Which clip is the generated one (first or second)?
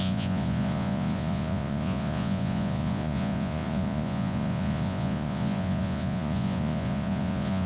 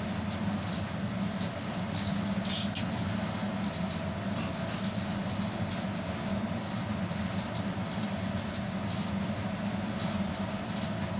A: first